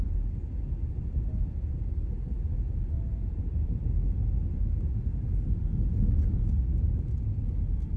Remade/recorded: recorded